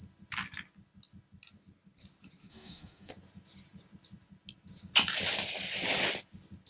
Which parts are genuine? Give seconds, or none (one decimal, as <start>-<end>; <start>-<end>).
0.0-2.4; 3.1-6.7